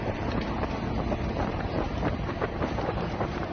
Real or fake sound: fake